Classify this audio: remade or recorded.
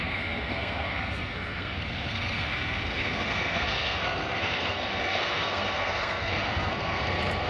remade